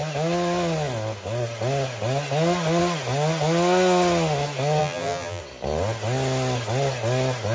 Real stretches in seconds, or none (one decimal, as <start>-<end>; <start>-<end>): 0.0-4.8; 5.4-7.5